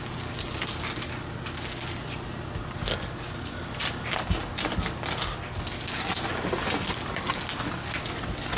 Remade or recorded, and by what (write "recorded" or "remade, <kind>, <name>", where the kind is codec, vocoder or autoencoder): recorded